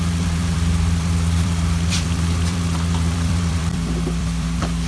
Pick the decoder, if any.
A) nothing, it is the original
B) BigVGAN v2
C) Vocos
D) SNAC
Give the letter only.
B